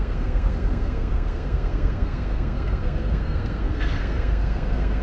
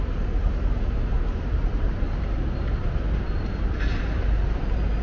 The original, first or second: second